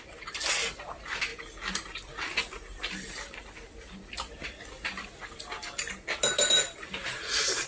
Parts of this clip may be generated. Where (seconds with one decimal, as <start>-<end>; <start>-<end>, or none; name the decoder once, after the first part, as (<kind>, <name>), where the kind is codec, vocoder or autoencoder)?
none